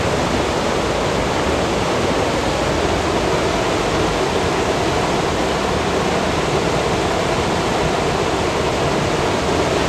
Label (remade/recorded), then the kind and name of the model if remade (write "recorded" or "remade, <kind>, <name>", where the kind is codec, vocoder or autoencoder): recorded